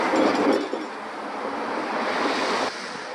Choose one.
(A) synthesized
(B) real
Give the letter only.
B